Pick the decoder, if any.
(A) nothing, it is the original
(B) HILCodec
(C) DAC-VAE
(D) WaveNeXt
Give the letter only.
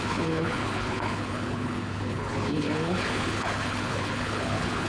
B